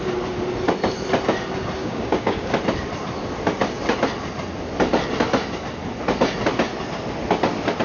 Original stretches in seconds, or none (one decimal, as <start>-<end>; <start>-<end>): 0.0-1.8; 2.5-7.8